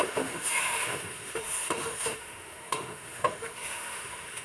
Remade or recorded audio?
remade